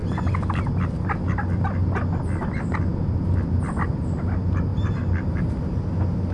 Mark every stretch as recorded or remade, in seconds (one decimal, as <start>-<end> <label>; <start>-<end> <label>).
0.0-4.7 recorded; 4.7-5.4 remade; 5.4-6.3 recorded